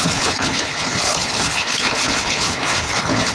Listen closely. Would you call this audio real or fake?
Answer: fake